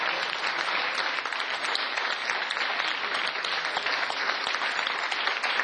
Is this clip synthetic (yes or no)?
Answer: no